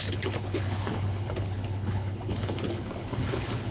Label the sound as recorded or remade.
remade